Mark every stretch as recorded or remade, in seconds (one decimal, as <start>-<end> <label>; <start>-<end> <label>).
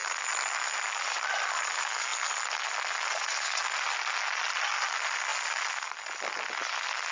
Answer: 0.0-7.1 recorded